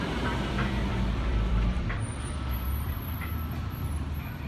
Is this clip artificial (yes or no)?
yes